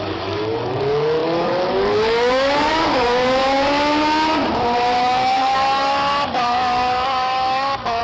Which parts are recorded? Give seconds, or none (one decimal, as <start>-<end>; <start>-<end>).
3.4-5.0